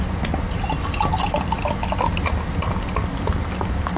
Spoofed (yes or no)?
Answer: no